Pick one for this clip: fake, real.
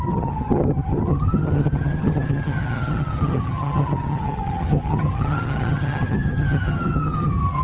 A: fake